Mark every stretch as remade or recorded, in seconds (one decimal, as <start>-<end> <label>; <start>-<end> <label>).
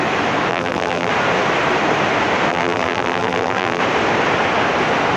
0.0-0.5 recorded; 0.5-1.1 remade; 1.1-2.5 recorded; 2.5-3.8 remade; 3.8-5.2 recorded